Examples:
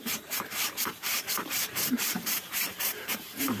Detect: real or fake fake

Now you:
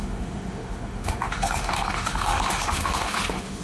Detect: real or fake fake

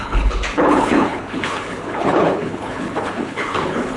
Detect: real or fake fake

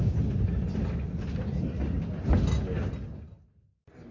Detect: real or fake real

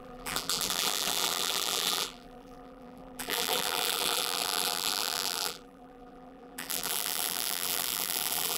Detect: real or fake fake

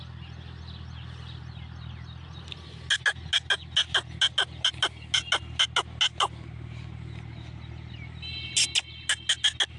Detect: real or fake real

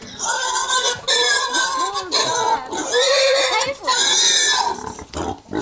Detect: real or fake real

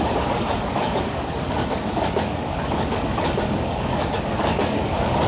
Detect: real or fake fake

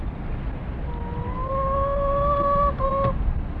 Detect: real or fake real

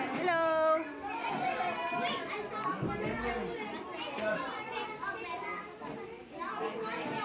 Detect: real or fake real